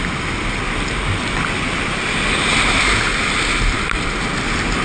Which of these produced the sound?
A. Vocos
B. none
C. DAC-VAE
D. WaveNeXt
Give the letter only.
B